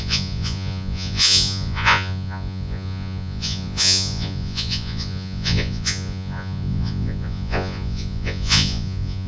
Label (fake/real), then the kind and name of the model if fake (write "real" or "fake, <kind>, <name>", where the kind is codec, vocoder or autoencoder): fake, vocoder, Vocos